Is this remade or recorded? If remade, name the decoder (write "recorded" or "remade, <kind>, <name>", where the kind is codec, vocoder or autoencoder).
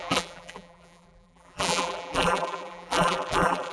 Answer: remade, vocoder, BigVGAN v2